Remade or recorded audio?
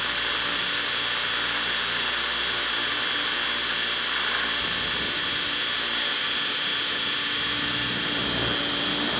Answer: recorded